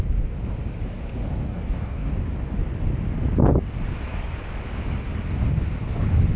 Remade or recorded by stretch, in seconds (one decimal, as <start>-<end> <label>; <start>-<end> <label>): 0.0-1.4 recorded; 1.4-2.1 remade; 2.1-6.4 recorded